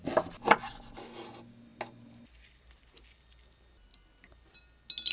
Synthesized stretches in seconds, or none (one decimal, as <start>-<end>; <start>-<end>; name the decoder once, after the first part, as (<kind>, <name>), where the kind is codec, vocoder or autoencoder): none